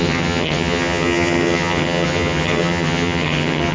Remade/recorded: remade